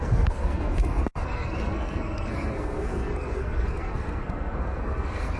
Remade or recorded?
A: remade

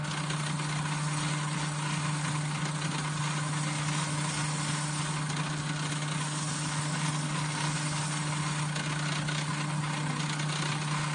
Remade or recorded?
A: recorded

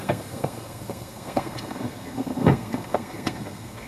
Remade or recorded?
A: remade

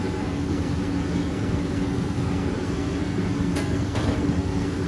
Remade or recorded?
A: remade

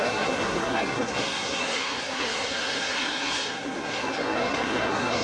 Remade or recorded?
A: remade